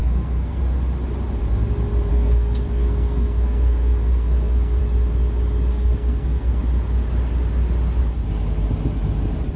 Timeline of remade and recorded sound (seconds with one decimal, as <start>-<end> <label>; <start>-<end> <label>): 0.0-0.6 remade; 0.6-2.1 recorded; 2.1-4.8 remade; 4.8-5.7 recorded; 5.7-6.6 remade; 6.6-9.6 recorded